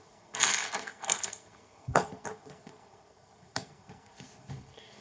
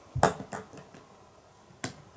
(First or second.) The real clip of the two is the second